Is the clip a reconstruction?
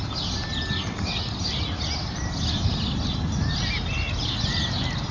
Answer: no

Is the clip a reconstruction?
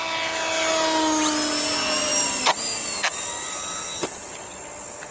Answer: no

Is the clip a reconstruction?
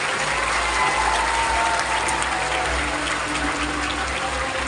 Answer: no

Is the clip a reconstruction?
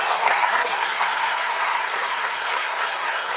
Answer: yes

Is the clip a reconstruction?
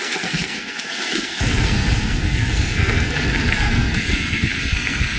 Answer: yes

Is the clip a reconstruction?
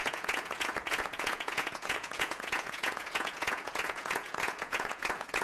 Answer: yes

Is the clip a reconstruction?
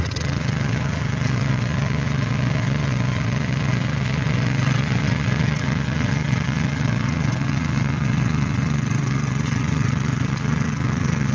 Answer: yes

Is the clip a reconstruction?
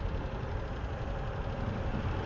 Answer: no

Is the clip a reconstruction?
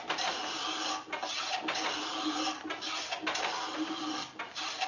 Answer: no